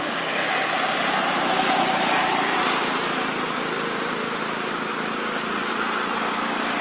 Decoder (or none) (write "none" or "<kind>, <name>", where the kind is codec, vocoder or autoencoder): none